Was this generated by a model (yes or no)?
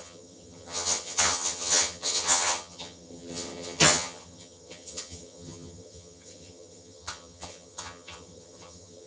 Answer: yes